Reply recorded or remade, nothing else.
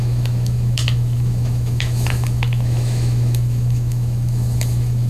remade